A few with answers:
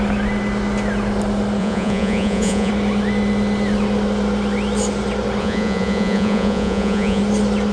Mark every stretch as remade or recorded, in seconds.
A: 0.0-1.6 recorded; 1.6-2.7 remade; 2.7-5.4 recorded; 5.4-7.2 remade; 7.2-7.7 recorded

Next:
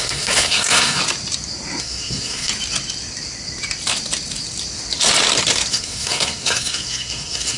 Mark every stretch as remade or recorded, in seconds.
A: 0.0-1.0 remade; 1.0-1.8 recorded; 1.8-2.5 remade; 2.5-5.7 recorded; 5.7-7.6 remade

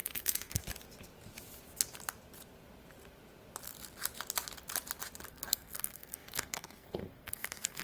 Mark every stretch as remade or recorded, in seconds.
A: 0.0-0.6 remade; 0.6-5.3 recorded; 5.3-7.8 remade

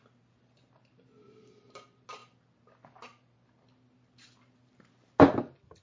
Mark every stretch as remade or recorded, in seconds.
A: 0.0-5.8 recorded

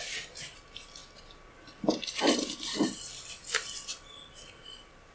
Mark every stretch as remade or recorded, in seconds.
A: 0.0-5.1 recorded